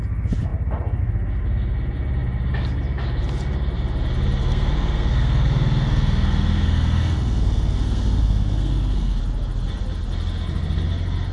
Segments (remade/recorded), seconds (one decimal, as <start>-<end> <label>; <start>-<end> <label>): 0.0-4.4 recorded; 4.4-9.2 remade; 9.2-11.3 recorded

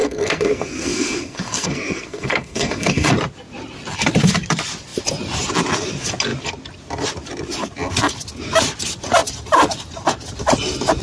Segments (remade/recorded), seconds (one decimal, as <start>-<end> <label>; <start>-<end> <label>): 0.0-3.1 remade; 3.1-11.0 recorded

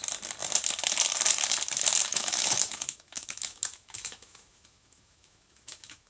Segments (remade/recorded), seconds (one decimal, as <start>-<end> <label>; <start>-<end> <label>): 0.0-2.1 recorded; 2.1-6.1 remade

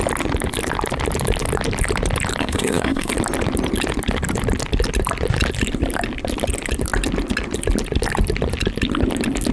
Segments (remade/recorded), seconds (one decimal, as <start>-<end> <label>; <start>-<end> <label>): 0.0-2.4 recorded; 2.4-3.1 remade; 3.1-9.5 recorded

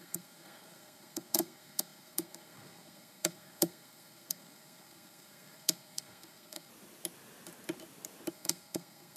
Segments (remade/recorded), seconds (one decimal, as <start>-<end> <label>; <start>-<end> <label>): 0.0-6.7 remade; 6.7-8.3 recorded; 8.3-9.2 remade

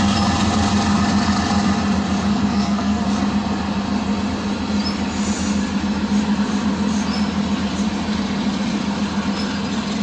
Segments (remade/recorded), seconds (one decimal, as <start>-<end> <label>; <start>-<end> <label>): 0.0-2.3 recorded; 2.3-3.0 remade; 3.0-10.0 recorded